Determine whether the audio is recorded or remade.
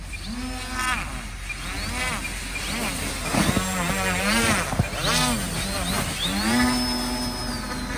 recorded